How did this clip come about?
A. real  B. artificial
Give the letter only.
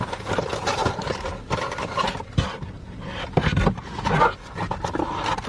A